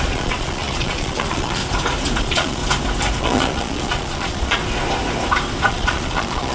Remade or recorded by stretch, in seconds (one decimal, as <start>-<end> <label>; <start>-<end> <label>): 0.0-1.6 remade; 1.6-2.2 recorded; 2.2-2.6 remade; 2.6-3.2 recorded; 3.2-4.6 remade; 4.6-5.7 recorded; 5.7-6.5 remade